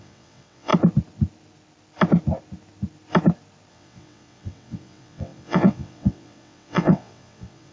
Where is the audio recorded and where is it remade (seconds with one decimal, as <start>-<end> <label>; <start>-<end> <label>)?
0.0-0.7 remade; 0.7-3.7 recorded; 3.7-7.7 remade